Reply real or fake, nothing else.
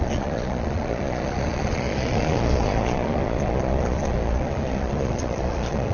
fake